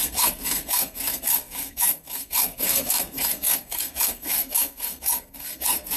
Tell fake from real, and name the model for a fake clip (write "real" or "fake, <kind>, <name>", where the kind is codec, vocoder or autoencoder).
fake, codec, SNAC